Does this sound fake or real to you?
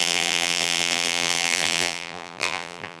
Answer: fake